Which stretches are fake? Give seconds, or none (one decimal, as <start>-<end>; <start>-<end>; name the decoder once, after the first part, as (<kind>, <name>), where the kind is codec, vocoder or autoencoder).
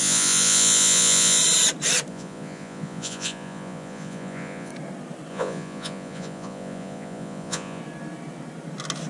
0.0-1.4 (vocoder, Vocos); 2.1-4.7; 5.3-7.8